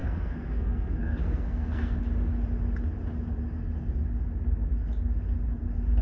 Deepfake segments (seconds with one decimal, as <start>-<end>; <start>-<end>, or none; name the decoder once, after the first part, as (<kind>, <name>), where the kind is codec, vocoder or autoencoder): 0.0-2.0 (codec, SNAC)